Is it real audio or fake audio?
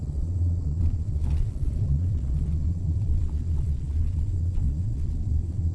fake